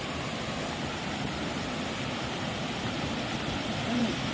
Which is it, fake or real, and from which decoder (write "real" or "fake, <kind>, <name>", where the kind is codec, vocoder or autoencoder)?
fake, vocoder, BigVGAN v2